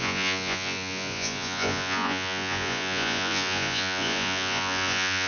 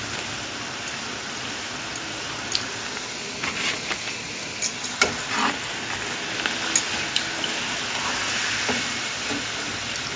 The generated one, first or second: first